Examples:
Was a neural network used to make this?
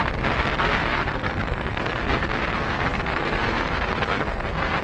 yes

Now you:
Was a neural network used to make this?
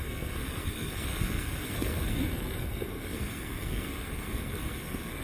yes